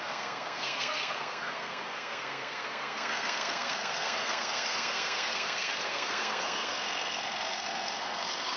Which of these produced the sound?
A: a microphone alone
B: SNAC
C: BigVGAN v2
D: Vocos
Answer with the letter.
B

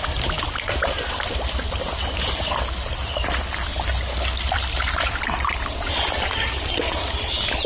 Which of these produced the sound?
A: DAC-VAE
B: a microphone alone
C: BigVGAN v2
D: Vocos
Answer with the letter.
C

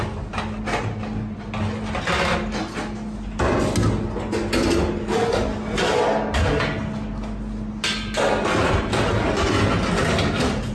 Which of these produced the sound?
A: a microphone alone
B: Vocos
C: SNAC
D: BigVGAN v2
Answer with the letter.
A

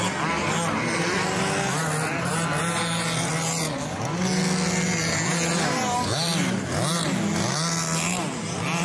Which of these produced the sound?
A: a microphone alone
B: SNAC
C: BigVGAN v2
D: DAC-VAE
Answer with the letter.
A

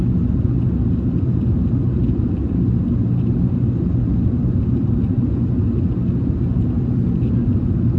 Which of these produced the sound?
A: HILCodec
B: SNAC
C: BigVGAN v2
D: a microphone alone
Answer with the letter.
D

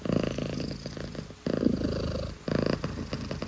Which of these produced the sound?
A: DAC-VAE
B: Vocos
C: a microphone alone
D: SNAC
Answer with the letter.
C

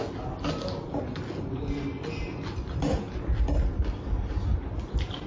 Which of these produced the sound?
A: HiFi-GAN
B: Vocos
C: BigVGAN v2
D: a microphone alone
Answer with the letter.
D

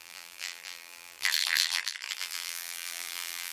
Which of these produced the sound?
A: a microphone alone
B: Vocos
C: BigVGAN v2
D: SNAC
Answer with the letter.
C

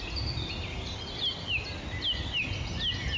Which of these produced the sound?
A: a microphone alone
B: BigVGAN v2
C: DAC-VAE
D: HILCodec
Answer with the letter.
A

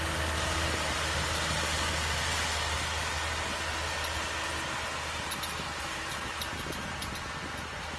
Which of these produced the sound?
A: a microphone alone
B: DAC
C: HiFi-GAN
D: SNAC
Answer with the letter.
A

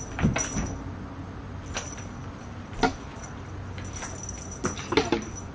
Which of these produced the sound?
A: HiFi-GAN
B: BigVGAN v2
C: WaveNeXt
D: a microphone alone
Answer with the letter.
D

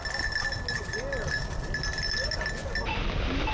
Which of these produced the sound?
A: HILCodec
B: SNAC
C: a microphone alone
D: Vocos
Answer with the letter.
C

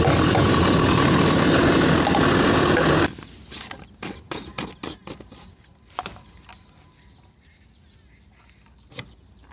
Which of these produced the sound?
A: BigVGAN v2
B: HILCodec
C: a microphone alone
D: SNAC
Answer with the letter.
C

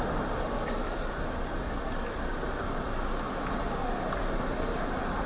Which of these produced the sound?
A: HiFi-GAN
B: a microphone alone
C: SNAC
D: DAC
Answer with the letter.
B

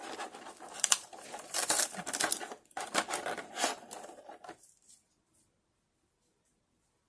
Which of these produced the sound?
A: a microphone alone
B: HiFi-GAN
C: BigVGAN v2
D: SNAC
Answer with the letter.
C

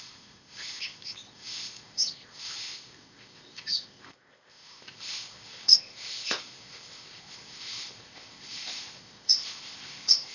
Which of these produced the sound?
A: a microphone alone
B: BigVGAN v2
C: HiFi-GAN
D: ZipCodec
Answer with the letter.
D